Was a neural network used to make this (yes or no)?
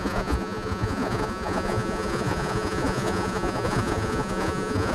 yes